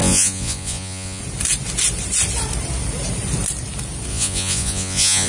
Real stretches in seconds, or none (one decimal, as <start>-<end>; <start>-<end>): 1.2-4.1